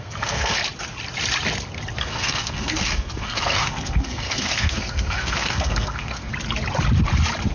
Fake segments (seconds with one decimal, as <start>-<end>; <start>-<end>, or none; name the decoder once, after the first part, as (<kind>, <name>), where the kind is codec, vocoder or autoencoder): 0.0-0.6 (codec, SNAC); 2.0-6.3